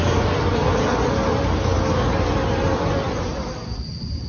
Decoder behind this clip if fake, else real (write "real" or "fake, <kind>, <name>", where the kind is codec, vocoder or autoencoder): real